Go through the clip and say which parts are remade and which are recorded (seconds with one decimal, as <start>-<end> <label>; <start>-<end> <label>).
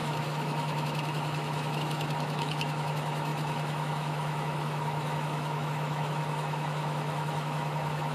0.0-8.1 remade